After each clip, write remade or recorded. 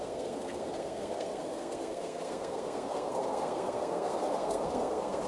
remade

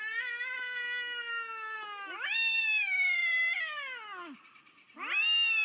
recorded